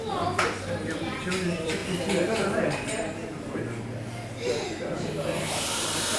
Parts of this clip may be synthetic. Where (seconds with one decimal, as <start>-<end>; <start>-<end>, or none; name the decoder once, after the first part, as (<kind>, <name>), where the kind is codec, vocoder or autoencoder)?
0.0-1.8 (vocoder, BigVGAN v2); 4.5-6.2